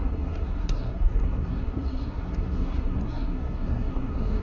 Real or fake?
fake